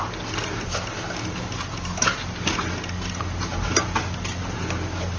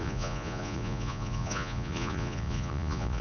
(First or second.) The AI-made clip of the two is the second